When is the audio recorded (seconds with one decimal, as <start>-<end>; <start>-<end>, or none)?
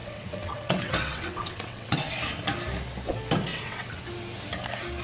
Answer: 2.1-3.5; 4.0-5.0